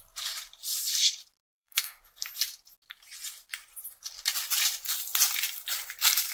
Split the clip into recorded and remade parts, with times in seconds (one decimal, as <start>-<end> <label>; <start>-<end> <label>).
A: 0.0-1.4 recorded; 1.4-2.0 remade; 2.0-6.3 recorded